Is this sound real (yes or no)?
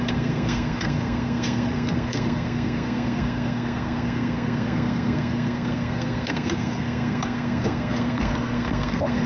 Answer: no